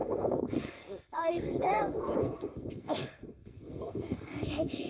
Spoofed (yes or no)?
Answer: yes